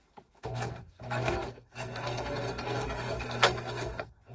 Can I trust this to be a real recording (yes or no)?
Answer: no